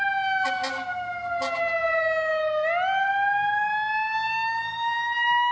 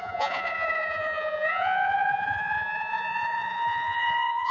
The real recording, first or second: first